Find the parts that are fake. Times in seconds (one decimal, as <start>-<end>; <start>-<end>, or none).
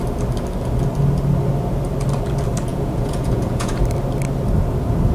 2.7-3.8